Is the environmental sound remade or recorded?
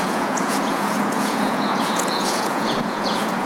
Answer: remade